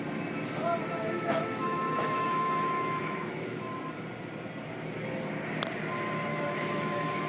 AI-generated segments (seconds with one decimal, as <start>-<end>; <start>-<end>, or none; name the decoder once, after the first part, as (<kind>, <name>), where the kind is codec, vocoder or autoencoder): 1.0-3.6 (autoencoder, DAC-VAE); 6.3-7.3